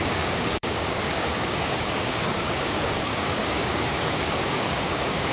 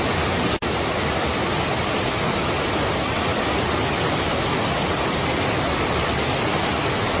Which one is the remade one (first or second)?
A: first